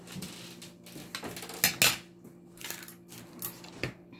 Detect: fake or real real